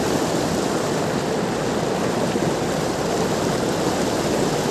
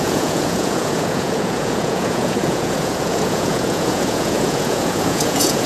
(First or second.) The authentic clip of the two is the first